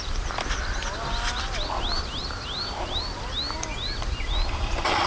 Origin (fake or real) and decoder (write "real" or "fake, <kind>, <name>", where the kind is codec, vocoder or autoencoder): real